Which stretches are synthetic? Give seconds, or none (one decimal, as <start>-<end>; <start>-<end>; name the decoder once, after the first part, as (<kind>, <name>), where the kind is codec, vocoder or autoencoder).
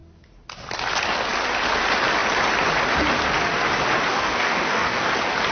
4.1-5.1 (codec, DAC)